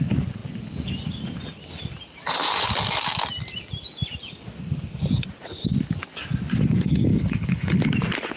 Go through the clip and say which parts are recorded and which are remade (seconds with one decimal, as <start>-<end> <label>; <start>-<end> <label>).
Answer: 0.0-7.1 recorded; 7.1-7.8 remade; 7.8-8.4 recorded